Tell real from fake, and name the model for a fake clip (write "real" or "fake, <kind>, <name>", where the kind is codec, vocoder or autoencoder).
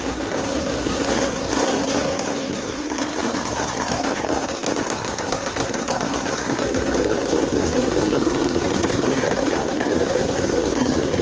fake, codec, SNAC